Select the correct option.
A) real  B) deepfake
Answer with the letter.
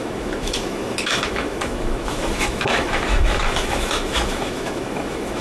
B